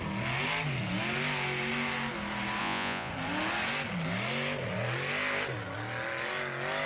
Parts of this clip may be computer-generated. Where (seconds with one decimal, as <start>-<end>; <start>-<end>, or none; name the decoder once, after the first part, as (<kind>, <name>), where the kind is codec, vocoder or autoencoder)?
2.6-3.1 (vocoder, Vocos)